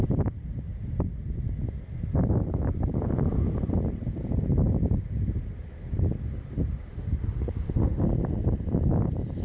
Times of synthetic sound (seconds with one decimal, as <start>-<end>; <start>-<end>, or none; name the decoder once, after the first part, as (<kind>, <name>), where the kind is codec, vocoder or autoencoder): 6.9-8.0 (autoencoder, DAC-VAE)